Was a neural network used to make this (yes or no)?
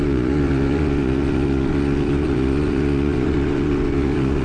yes